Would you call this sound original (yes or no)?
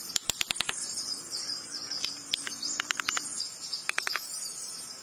no